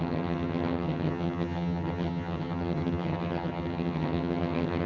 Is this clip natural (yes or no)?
no